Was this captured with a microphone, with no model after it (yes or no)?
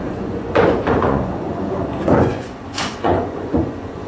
no